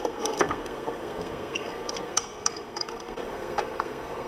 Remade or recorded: remade